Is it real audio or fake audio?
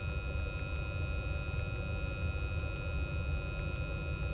real